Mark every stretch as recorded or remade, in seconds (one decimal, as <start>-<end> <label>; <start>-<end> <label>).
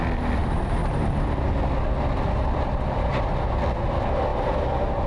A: 0.0-0.4 recorded; 0.4-3.5 remade; 3.5-4.3 recorded; 4.3-5.1 remade